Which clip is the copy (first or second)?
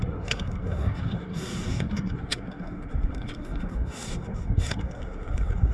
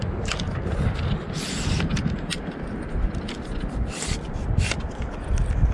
first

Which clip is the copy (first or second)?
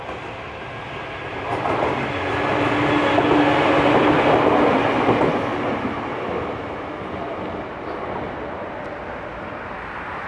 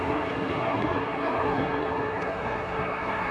second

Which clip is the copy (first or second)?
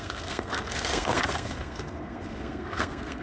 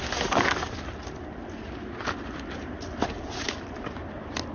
first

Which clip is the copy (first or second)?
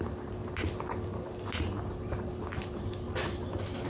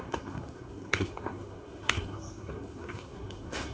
second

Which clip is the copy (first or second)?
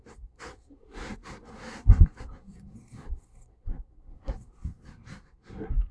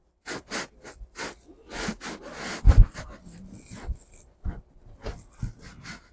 first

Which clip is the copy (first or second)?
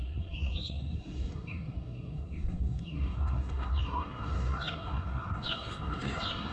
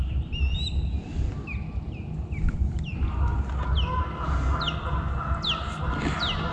first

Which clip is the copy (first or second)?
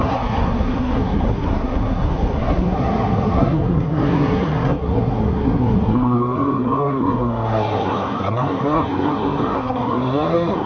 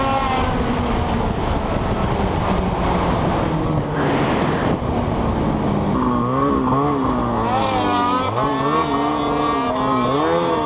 first